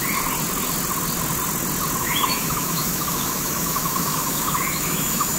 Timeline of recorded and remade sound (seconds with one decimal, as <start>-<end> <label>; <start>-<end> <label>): 0.0-2.0 recorded; 2.0-5.4 remade